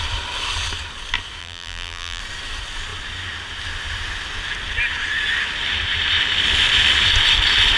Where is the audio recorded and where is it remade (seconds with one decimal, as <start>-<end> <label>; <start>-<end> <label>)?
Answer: 0.0-1.4 recorded; 1.4-2.2 remade; 2.2-7.8 recorded